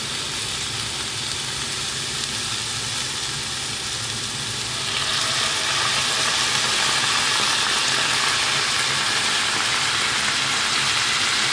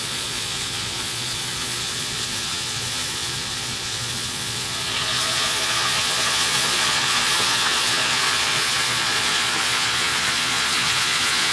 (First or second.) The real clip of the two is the first